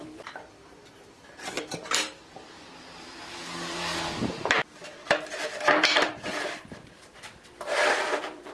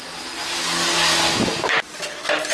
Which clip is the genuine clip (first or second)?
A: second